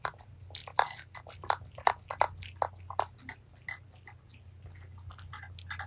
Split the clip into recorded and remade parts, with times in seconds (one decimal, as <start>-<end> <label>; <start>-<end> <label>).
0.0-5.9 recorded